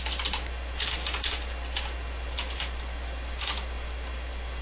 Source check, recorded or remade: recorded